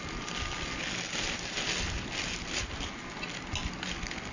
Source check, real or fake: real